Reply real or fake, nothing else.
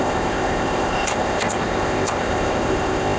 fake